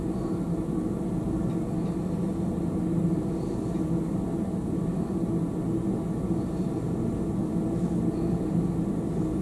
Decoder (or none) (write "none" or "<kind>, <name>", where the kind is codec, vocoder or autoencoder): none